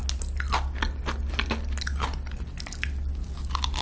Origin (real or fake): real